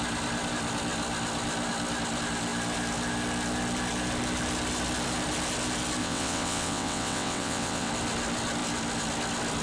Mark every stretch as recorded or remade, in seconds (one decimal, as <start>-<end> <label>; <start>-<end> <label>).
0.0-6.0 recorded; 6.0-7.9 remade; 7.9-9.6 recorded